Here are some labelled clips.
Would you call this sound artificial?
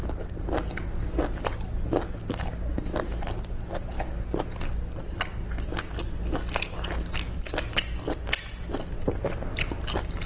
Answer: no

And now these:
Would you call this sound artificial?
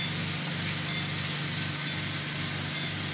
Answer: no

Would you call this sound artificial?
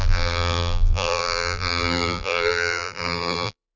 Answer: yes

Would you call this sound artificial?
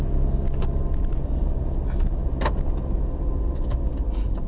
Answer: no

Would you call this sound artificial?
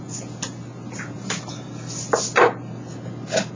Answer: no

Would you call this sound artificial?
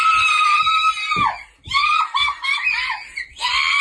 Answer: yes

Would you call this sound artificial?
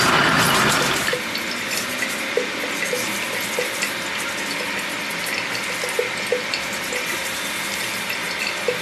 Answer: no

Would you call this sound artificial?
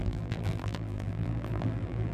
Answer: yes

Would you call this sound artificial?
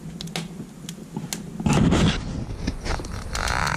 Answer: no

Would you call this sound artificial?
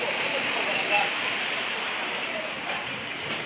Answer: yes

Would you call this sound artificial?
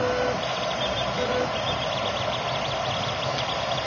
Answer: no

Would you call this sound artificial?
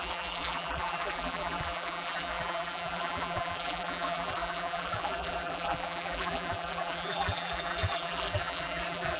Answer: yes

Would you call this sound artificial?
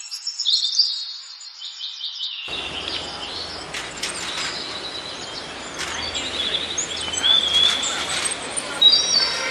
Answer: no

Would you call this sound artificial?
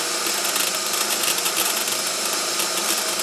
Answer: no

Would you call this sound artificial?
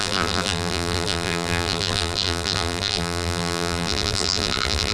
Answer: yes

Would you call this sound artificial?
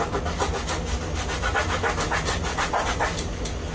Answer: no